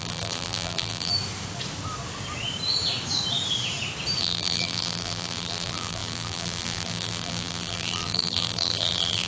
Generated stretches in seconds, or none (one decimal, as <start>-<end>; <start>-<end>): 0.0-1.1; 4.2-9.3